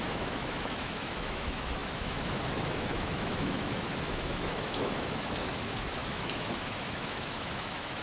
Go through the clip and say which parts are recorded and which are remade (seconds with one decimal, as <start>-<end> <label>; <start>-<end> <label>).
0.0-8.0 remade